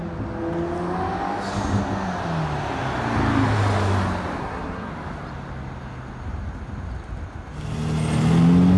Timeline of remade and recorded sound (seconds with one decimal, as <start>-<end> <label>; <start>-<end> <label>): 0.0-4.4 recorded; 4.4-4.9 remade; 4.9-8.8 recorded